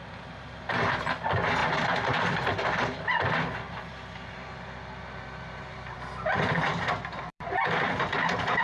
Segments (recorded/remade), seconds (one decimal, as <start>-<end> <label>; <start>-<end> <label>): 0.0-1.6 recorded; 1.6-6.0 remade; 6.0-7.3 recorded; 7.3-8.1 remade; 8.1-8.6 recorded